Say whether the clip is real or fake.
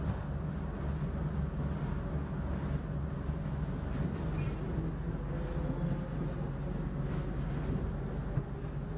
real